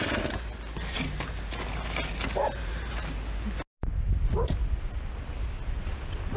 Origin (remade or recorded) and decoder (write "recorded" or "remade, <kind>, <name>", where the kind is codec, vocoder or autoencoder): recorded